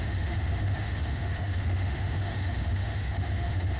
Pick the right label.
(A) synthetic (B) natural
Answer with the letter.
A